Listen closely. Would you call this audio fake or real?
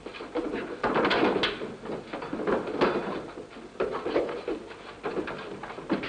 real